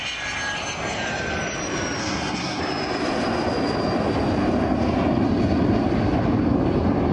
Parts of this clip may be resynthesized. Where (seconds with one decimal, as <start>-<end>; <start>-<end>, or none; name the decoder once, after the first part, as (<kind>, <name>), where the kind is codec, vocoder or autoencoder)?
2.0-2.6 (codec, SNAC)